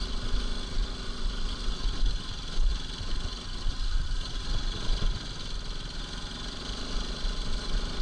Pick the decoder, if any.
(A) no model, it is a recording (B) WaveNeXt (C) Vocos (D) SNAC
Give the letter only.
A